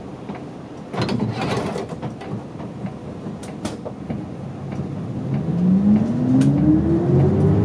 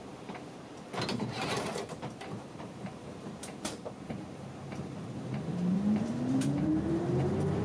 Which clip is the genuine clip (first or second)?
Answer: first